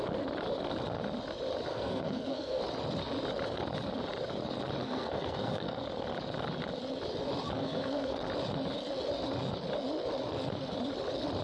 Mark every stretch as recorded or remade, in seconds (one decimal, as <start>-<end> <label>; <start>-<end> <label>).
0.0-1.7 recorded; 1.7-2.6 remade; 2.6-4.8 recorded; 4.8-5.8 remade; 5.8-7.6 recorded; 7.6-8.2 remade; 8.2-11.4 recorded